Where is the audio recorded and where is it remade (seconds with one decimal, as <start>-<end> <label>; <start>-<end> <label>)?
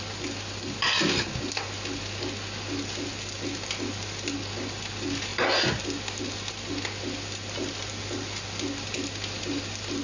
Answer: 0.0-10.0 recorded